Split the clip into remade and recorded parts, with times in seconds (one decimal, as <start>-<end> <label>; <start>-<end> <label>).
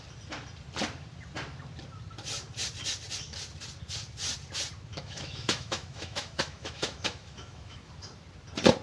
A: 0.0-4.9 recorded; 4.9-7.9 remade; 7.9-8.8 recorded